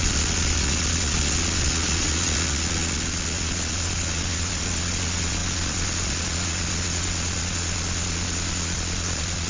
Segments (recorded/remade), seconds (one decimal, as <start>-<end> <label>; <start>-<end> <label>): 0.0-9.5 remade